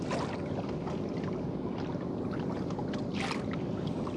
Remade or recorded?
recorded